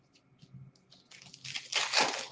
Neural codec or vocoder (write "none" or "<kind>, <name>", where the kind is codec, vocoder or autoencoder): none